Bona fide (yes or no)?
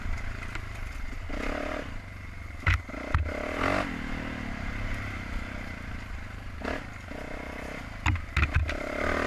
yes